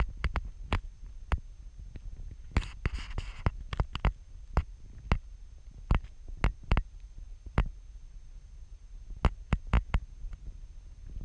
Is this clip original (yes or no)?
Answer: yes